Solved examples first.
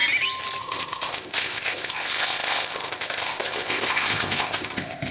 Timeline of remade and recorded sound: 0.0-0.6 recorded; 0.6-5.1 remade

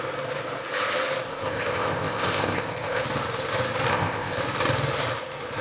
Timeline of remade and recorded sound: 0.0-1.3 recorded; 1.3-3.0 remade; 3.0-3.9 recorded; 3.9-4.4 remade; 4.4-5.6 recorded

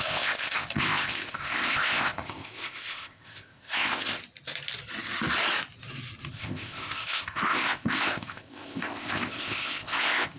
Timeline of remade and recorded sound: 0.0-4.2 remade; 4.2-6.3 recorded; 6.3-10.4 remade

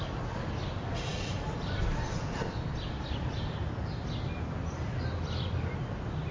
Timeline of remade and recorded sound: 0.0-6.3 recorded